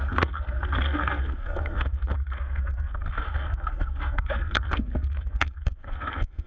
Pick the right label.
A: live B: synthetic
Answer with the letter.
B